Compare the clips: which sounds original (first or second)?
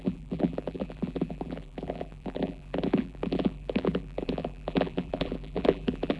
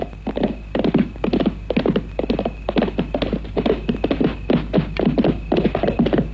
second